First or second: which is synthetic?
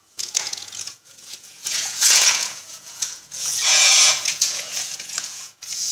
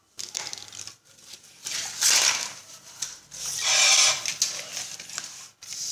first